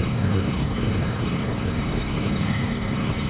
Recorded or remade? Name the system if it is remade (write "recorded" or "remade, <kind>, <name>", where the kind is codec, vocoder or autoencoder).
remade, codec, SNAC